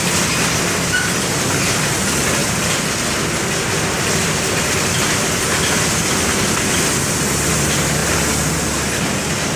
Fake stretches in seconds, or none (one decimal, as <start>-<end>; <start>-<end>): none